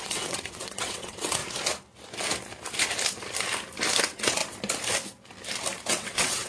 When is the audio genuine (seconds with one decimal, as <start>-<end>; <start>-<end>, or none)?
1.4-4.0; 4.4-5.9